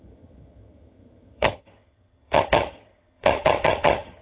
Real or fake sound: fake